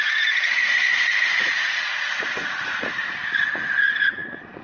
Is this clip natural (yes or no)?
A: no